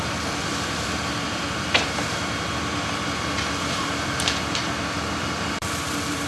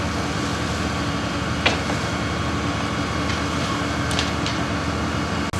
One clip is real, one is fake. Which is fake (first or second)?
first